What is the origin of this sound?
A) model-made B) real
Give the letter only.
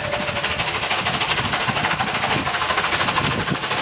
B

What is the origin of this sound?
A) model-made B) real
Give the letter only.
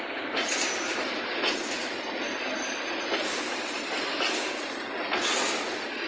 B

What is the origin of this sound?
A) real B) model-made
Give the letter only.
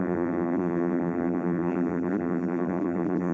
B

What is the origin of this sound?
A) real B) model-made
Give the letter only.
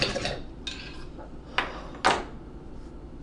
A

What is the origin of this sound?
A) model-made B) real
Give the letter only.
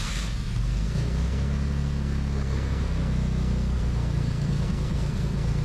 A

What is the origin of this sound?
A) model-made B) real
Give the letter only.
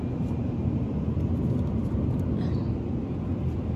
B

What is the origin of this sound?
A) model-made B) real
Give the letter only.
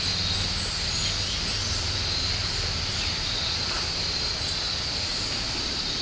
B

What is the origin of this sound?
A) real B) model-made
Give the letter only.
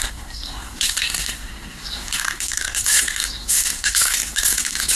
B